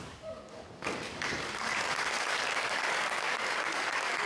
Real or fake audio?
fake